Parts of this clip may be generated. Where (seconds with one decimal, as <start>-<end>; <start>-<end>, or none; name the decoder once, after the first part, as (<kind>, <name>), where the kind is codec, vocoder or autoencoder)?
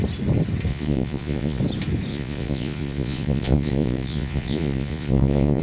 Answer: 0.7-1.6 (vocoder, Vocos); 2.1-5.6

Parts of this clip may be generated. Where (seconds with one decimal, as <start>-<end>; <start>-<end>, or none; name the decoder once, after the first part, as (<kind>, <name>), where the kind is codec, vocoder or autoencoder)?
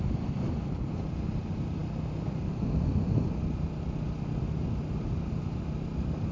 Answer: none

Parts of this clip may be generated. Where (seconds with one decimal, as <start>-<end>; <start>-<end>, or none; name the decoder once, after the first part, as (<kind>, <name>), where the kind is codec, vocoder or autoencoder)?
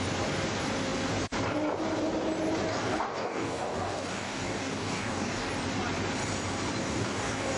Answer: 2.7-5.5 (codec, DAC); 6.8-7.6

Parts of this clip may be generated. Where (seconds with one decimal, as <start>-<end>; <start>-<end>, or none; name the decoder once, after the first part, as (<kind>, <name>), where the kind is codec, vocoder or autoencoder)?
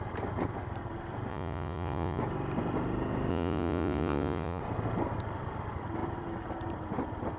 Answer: 1.3-2.2 (vocoder, Vocos); 3.3-4.6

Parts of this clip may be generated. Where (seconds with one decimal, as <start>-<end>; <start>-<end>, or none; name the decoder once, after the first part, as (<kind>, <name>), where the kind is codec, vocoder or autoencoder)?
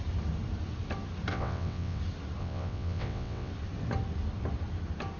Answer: 1.3-2.0 (vocoder, WaveNeXt); 2.4-3.5